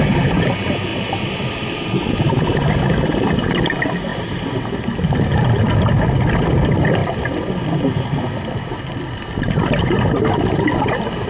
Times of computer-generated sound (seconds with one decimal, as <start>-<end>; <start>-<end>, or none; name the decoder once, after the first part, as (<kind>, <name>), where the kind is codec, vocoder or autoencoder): 0.9-2.0 (vocoder, BigVGAN v2); 4.1-5.0; 7.0-9.6